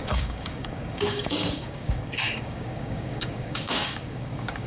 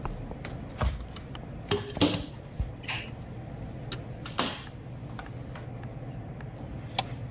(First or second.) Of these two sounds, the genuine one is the second